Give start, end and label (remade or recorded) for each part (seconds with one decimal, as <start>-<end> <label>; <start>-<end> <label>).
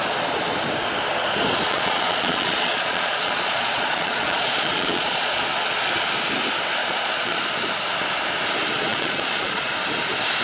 0.0-1.7 recorded; 1.7-5.4 remade; 5.4-6.8 recorded; 6.8-7.4 remade; 7.4-8.9 recorded; 8.9-9.7 remade; 9.7-10.4 recorded